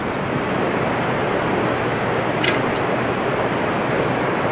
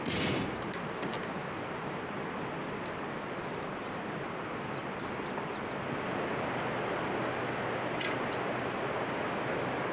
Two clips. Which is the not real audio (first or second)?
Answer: first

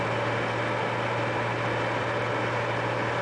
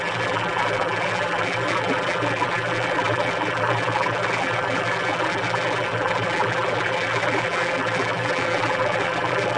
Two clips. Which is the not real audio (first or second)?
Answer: second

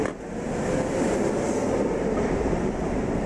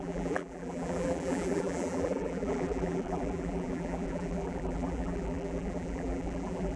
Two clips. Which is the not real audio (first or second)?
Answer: second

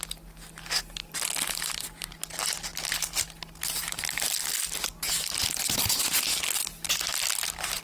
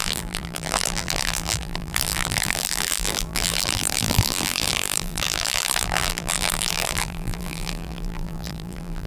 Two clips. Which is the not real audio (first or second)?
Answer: second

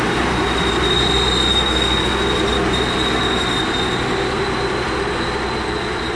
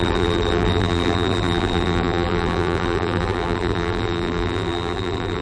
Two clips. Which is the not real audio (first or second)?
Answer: second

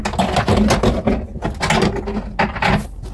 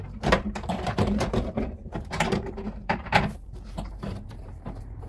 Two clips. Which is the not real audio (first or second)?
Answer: second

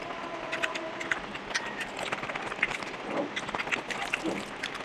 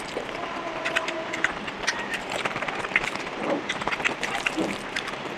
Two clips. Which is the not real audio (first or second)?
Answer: second